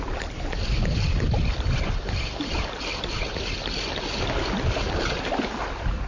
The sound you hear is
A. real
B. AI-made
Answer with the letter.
A